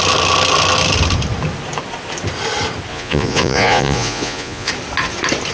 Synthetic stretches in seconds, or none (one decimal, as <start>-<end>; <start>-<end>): 2.9-4.7